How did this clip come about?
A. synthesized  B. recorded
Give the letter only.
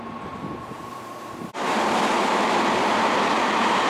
A